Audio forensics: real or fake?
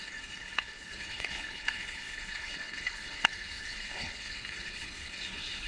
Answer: fake